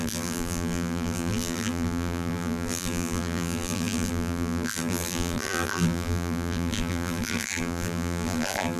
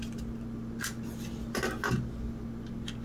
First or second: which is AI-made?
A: first